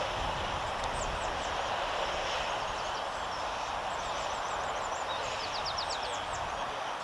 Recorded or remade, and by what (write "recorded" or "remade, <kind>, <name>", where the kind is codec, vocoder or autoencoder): recorded